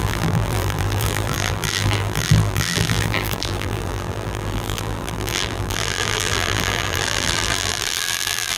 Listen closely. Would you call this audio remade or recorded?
remade